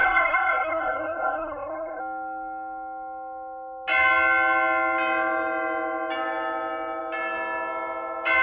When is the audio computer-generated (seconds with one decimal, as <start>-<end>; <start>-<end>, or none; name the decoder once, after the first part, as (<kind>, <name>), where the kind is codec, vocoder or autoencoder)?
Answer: 0.0-2.0 (codec, SNAC)